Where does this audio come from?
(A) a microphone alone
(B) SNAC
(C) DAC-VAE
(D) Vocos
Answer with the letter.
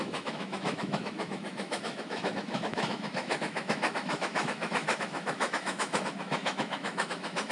C